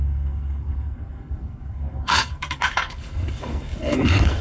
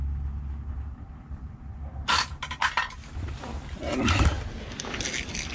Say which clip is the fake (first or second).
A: first